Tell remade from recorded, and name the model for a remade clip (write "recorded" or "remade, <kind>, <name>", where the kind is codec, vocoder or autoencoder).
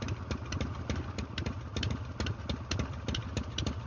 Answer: remade, vocoder, BigVGAN v2